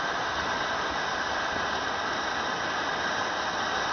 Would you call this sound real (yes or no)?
yes